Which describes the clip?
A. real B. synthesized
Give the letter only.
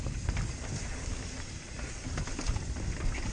A